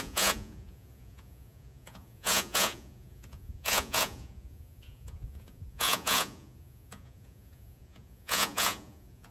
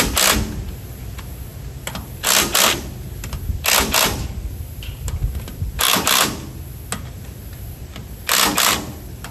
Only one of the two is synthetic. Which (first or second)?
first